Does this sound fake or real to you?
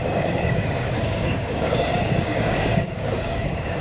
fake